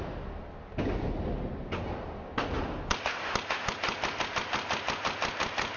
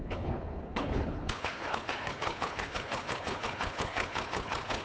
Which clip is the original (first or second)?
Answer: first